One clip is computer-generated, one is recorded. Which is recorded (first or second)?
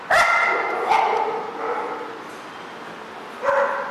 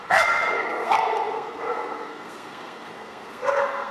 first